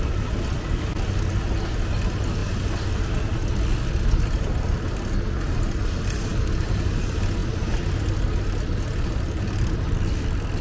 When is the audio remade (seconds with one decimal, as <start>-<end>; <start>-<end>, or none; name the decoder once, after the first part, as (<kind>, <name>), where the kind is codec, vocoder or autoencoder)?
none